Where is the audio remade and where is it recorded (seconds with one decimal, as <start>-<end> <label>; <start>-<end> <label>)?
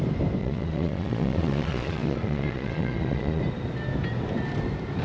0.0-0.4 recorded; 0.4-3.4 remade; 3.4-5.0 recorded